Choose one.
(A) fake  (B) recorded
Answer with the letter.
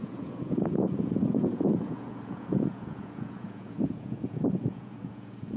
A